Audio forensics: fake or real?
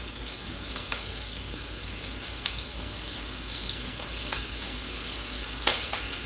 fake